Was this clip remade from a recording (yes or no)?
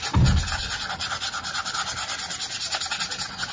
no